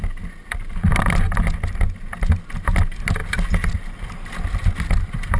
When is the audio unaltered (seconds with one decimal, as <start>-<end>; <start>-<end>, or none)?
0.0-5.4

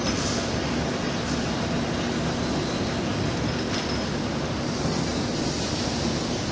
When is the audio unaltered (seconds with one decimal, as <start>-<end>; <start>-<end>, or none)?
0.0-6.5